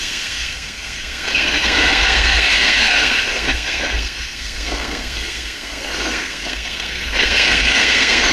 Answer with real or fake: fake